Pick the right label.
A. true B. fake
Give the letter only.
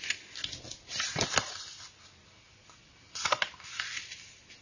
A